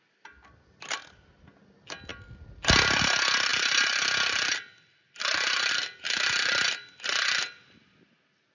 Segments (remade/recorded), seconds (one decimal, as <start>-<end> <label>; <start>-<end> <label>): 0.0-8.5 recorded